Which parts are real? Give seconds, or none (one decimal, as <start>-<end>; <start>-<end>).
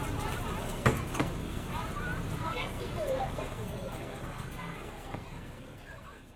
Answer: 0.0-0.6; 1.7-2.4